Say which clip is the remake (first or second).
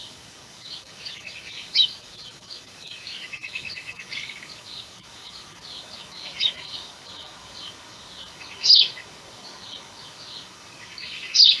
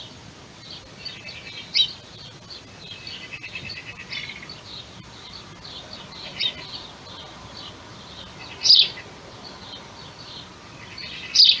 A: first